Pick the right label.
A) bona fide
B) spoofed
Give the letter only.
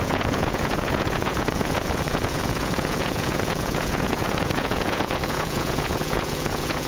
B